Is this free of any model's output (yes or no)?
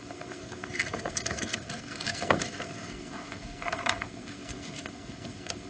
no